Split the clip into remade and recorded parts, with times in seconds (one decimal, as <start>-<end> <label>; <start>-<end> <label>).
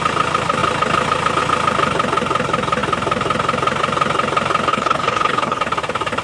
0.0-4.7 recorded; 4.7-5.6 remade; 5.6-6.2 recorded